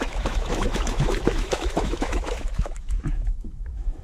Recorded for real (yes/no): no